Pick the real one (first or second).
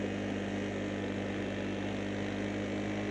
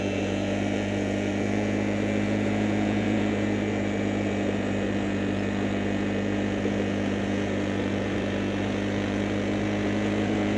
first